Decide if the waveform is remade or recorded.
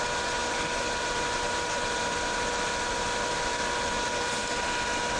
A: recorded